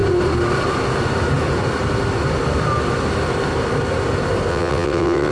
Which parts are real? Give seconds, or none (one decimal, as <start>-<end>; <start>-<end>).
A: 0.0-4.5